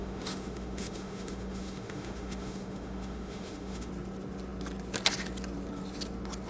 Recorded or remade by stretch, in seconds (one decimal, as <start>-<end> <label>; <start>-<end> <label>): 0.0-3.9 remade; 3.9-6.5 recorded